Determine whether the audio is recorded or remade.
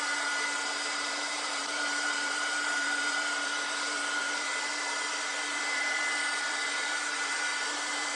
remade